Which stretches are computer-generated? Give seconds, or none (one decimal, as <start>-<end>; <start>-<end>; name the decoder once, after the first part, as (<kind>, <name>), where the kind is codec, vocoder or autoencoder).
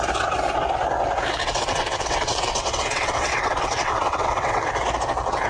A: 1.4-4.7 (vocoder, WaveNeXt)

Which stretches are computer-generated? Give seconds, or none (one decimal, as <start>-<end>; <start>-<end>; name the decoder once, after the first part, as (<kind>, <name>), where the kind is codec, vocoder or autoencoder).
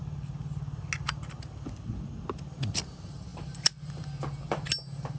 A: none